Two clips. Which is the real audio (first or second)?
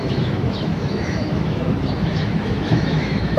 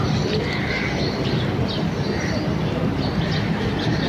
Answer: second